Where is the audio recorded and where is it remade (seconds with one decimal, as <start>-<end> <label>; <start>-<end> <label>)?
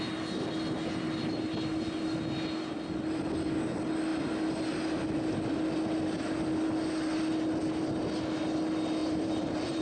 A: 0.0-9.0 recorded; 9.0-9.8 remade